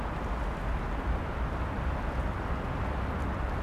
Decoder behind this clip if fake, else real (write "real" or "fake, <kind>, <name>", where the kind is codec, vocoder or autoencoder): real